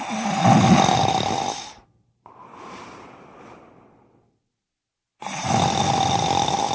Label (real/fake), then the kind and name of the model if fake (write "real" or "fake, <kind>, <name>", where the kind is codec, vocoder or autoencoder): real